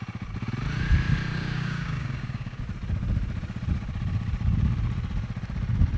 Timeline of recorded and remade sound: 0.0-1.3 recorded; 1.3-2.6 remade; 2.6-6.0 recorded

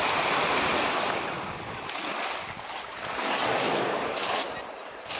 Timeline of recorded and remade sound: 0.0-3.0 recorded; 3.0-4.4 remade; 4.4-5.2 recorded

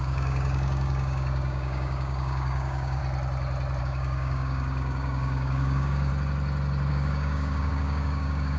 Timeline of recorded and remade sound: 0.0-3.0 remade; 3.0-3.8 recorded; 3.8-6.1 remade; 6.1-6.9 recorded; 6.9-8.6 remade

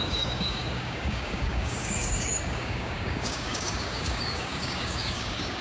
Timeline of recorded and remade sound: 0.0-5.6 remade

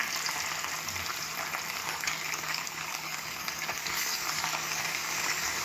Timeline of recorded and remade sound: 0.0-1.8 recorded; 1.8-5.6 remade